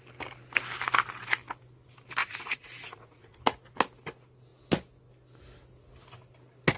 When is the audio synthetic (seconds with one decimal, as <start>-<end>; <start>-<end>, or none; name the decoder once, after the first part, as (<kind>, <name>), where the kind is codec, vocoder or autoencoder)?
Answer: 2.2-3.4 (vocoder, Vocos)